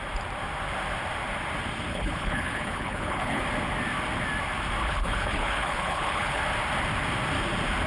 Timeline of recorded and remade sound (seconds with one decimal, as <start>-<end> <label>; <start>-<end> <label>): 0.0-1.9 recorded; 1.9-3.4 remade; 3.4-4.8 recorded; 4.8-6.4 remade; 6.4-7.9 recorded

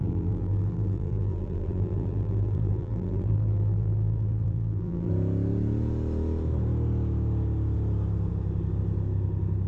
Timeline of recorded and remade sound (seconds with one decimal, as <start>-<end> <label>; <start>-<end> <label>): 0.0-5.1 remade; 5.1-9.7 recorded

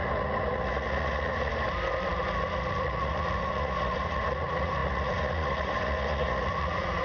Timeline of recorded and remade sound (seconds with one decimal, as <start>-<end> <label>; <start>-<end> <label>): 0.0-1.5 remade; 1.5-2.7 recorded; 2.7-7.0 remade